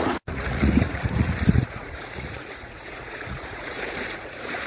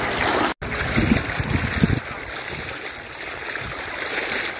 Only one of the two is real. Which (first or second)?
second